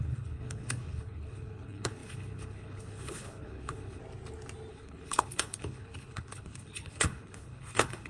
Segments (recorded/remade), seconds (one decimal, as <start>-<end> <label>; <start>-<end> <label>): 0.0-4.0 remade; 4.0-4.7 recorded; 4.7-8.1 remade